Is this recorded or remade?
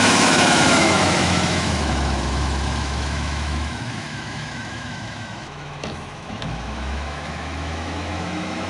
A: remade